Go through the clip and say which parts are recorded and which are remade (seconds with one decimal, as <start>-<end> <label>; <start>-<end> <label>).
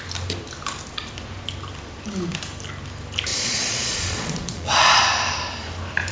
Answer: 0.0-3.3 recorded; 3.3-5.0 remade; 5.0-6.1 recorded